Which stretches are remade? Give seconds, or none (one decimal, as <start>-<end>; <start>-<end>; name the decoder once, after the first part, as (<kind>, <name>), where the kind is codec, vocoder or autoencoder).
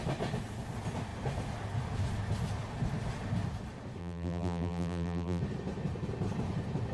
4.0-5.4 (vocoder, BigVGAN v2)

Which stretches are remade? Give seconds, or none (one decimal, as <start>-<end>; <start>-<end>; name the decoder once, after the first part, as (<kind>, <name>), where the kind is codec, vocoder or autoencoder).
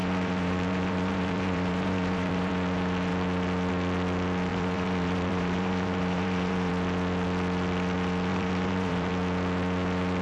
0.0-2.5 (vocoder, BigVGAN v2); 4.5-6.7; 8.3-9.1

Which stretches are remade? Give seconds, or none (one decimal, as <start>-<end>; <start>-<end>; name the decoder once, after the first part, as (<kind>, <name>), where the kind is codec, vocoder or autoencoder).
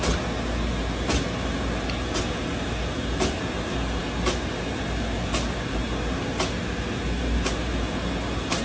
none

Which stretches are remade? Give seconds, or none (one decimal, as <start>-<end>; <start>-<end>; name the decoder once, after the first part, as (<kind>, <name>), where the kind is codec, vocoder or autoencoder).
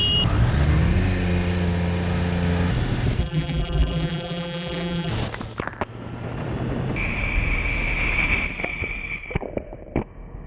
3.2-5.1 (vocoder, BigVGAN v2)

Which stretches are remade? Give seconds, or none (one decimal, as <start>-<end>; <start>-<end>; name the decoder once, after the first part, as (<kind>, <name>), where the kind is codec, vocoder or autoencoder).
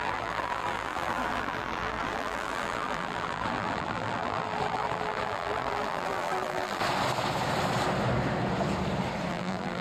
0.0-6.8 (vocoder, BigVGAN v2); 9.3-9.8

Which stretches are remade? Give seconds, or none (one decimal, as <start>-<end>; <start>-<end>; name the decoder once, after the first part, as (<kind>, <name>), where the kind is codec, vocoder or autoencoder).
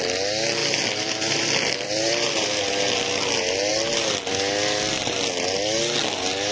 0.6-2.6 (vocoder, BigVGAN v2)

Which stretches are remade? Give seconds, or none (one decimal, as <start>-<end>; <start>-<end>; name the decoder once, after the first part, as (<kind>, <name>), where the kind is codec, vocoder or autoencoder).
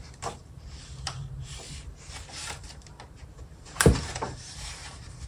0.0-5.3 (vocoder, BigVGAN v2)